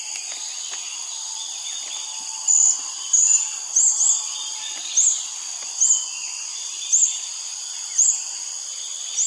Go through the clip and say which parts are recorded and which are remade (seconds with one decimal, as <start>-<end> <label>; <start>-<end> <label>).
0.0-9.3 recorded